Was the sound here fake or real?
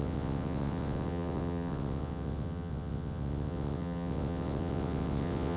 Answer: fake